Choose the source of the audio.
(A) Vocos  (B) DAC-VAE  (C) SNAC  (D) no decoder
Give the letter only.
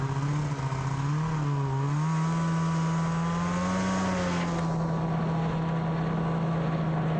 D